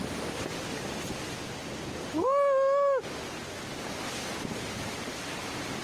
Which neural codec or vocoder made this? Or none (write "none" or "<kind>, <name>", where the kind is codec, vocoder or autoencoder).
none